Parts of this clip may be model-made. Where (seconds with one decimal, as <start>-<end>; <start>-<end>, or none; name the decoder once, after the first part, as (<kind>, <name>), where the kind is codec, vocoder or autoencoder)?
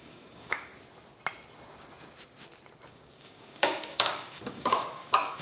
0.0-0.7 (codec, DAC); 2.9-5.4